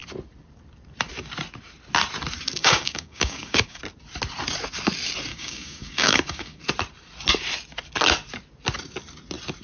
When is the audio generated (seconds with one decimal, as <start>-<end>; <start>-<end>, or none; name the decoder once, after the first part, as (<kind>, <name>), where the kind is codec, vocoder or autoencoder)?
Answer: 2.6-3.8 (codec, DAC); 5.3-6.6